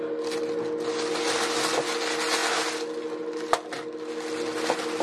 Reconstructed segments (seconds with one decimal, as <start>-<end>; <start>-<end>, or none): none